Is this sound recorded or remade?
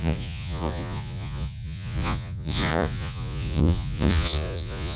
remade